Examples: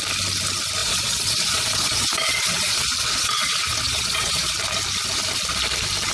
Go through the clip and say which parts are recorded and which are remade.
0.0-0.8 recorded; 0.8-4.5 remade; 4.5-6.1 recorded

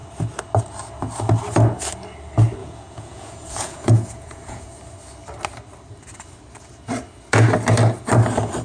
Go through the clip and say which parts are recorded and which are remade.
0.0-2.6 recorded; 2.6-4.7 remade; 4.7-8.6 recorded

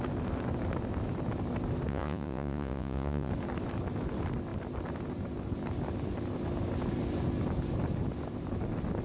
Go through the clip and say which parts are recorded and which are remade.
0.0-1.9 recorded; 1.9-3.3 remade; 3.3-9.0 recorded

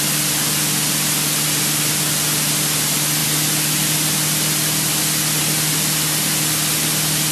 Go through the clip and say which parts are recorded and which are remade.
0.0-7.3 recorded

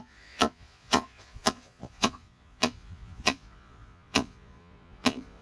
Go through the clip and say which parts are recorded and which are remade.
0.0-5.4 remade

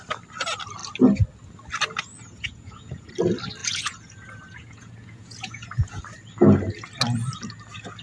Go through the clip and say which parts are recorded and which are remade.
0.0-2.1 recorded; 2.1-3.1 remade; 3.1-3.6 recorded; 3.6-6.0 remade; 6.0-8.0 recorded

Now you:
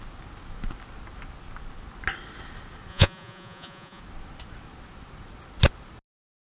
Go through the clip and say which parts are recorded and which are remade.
0.0-2.9 recorded; 2.9-4.0 remade; 4.0-6.4 recorded

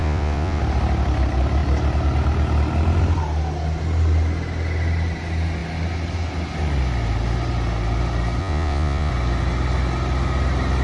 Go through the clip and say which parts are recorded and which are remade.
0.0-0.6 remade; 0.6-8.4 recorded; 8.4-9.1 remade; 9.1-10.8 recorded